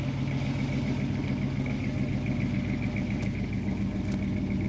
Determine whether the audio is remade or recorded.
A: recorded